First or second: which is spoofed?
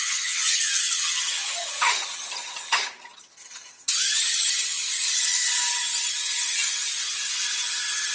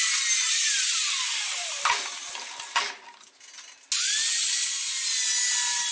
first